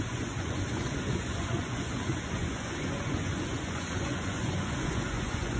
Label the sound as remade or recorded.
remade